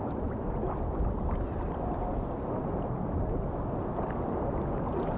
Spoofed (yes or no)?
no